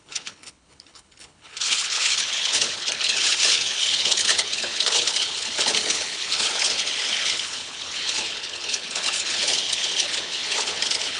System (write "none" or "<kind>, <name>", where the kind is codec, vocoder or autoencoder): codec, HILCodec